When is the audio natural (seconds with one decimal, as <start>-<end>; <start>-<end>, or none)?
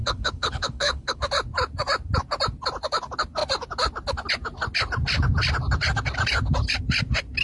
1.2-7.4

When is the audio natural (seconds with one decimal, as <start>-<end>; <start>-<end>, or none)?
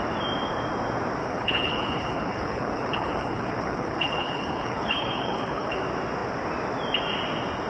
0.0-1.2; 5.8-7.7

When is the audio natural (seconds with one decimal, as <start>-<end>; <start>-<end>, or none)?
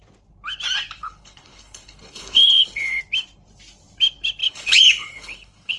0.0-1.0; 3.0-4.4